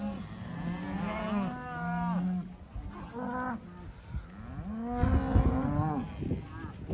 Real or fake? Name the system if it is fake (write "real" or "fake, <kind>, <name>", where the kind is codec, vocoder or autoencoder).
real